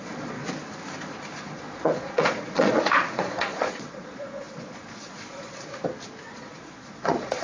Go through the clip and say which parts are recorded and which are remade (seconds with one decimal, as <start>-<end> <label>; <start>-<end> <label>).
0.0-0.4 remade; 0.4-1.0 recorded; 1.0-5.7 remade; 5.7-6.3 recorded; 6.3-7.4 remade